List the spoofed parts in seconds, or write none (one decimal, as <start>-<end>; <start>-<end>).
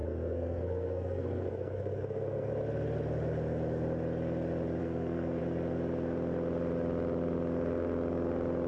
0.0-2.5; 4.8-5.4